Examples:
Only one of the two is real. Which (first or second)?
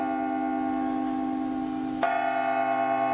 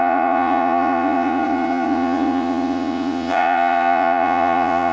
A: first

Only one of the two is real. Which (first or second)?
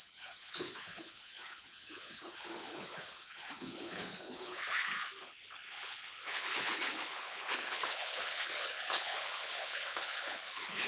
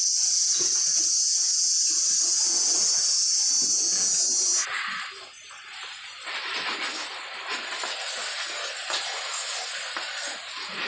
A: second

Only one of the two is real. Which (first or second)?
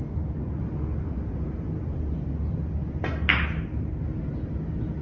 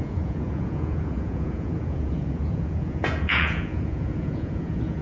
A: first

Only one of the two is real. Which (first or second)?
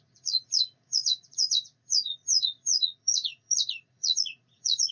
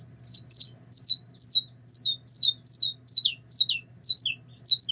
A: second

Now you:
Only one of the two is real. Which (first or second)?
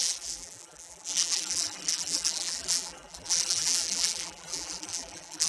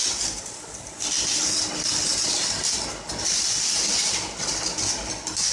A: second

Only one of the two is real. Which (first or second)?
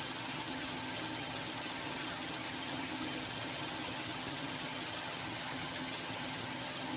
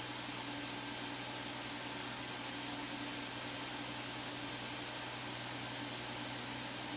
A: second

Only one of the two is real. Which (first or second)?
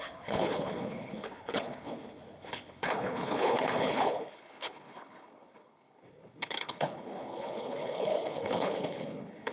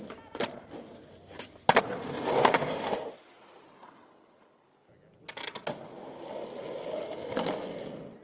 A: second